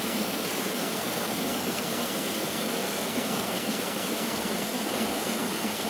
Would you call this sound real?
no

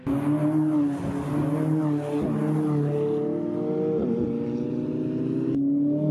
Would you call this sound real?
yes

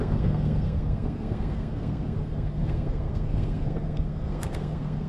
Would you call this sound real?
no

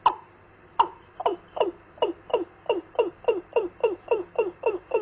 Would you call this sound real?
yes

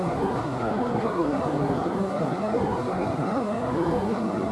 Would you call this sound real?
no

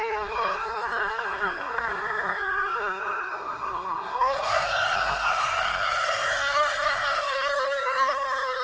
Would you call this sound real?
no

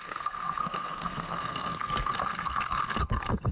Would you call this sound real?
no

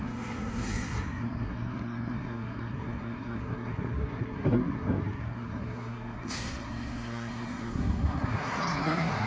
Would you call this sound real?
no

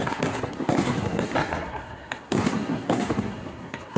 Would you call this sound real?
no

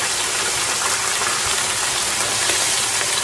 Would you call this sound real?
yes